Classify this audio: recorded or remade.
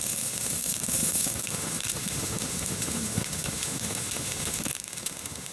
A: remade